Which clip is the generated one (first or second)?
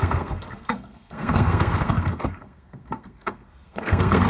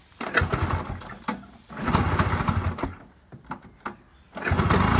first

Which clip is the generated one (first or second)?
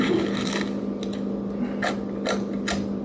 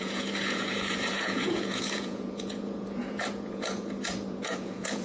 second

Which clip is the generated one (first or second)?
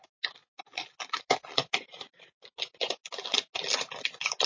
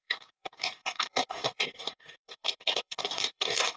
second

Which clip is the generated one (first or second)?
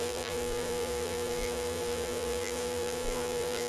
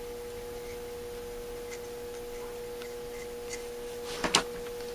first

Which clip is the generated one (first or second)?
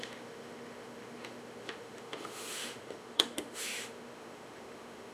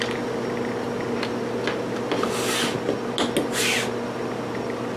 first